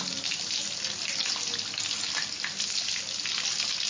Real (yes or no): yes